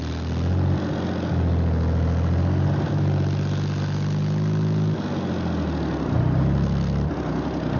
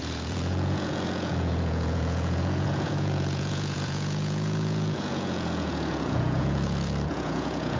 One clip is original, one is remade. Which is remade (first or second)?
second